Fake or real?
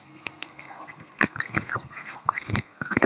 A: fake